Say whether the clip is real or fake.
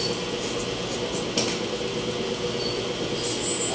real